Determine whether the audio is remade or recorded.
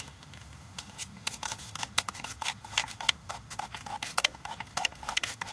remade